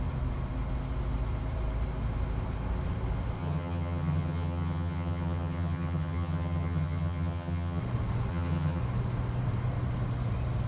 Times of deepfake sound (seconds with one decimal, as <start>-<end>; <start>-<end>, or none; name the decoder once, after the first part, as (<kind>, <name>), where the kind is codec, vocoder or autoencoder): 3.4-7.8 (vocoder, HiFi-GAN); 8.3-8.8